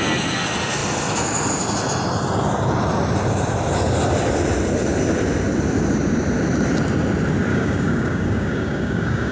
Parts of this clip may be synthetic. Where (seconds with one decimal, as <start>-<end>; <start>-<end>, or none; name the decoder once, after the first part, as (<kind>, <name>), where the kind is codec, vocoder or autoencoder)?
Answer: 7.5-9.3 (codec, DAC)